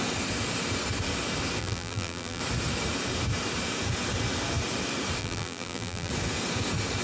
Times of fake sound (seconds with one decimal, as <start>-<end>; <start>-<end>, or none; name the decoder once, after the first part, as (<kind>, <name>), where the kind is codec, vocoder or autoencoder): 1.6-2.4 (vocoder, BigVGAN v2); 5.2-6.1